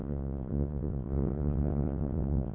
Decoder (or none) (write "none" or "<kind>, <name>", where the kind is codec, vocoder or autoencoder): vocoder, WaveNeXt